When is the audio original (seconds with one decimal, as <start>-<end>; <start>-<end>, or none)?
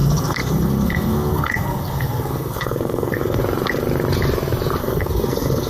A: 3.4-4.8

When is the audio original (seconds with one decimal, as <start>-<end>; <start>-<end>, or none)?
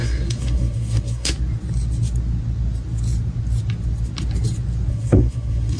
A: 1.3-4.9